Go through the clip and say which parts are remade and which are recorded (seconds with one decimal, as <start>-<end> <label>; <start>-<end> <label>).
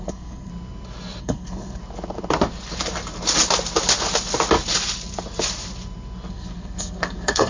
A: 0.0-0.5 remade; 0.5-1.2 recorded; 1.2-1.8 remade; 1.8-6.3 recorded; 6.3-7.5 remade